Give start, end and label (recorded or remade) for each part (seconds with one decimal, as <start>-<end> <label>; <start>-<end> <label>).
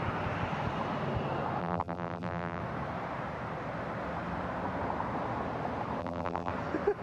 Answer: 0.0-1.6 recorded; 1.6-2.6 remade; 2.6-6.0 recorded; 6.0-6.5 remade; 6.5-7.0 recorded